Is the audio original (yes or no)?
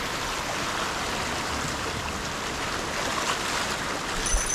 yes